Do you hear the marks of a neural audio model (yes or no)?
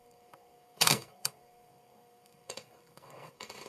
yes